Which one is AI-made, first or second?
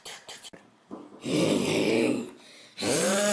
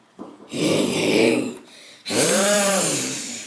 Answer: second